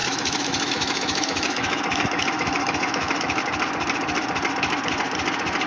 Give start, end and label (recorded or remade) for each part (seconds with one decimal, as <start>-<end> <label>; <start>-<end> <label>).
0.0-3.4 remade; 3.4-5.7 recorded